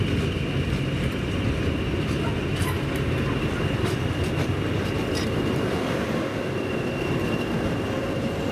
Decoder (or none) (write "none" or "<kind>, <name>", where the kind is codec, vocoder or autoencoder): none